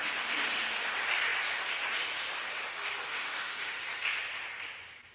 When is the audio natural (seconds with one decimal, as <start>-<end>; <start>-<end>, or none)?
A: 0.0-3.1; 3.8-5.1